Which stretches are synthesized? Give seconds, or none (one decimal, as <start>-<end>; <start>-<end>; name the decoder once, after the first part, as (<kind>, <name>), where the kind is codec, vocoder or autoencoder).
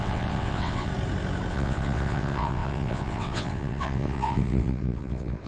0.0-0.9 (vocoder, WaveNeXt); 1.5-5.5